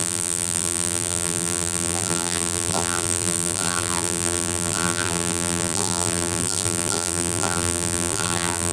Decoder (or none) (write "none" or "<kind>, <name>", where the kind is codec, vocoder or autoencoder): vocoder, BigVGAN v2